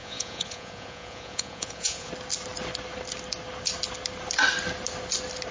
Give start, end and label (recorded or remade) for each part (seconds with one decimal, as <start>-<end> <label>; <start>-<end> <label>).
0.0-2.1 remade; 2.1-5.5 recorded